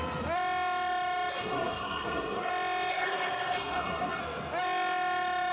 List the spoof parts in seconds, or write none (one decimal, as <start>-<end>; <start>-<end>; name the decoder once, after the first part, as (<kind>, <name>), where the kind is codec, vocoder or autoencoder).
1.3-2.5 (codec, SNAC); 2.9-4.2